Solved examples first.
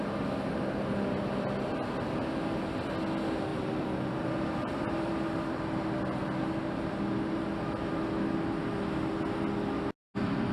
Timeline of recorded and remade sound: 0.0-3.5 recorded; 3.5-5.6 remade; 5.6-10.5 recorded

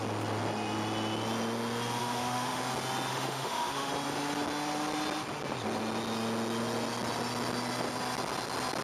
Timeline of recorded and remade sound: 0.0-2.0 recorded; 2.0-2.6 remade; 2.6-3.1 recorded; 3.1-3.9 remade; 3.9-8.8 recorded